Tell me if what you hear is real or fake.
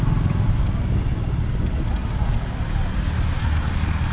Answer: real